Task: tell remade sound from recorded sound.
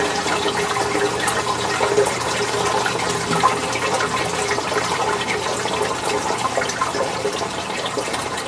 remade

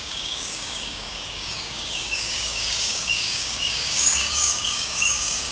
remade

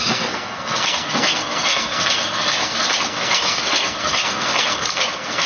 remade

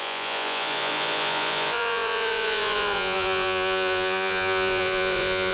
remade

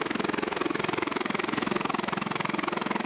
remade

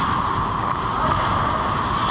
recorded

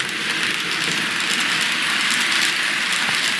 recorded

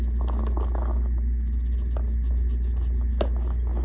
recorded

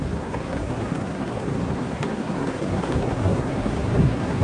remade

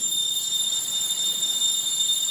recorded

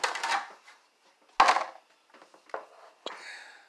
recorded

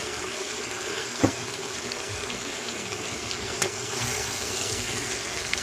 remade